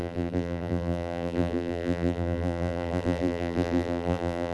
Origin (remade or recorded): remade